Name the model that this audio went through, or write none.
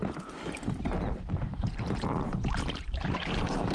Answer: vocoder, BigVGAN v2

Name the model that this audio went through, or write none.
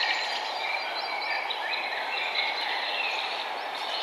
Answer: vocoder, BigVGAN v2